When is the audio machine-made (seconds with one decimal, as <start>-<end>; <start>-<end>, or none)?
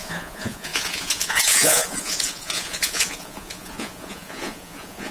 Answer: 0.0-5.1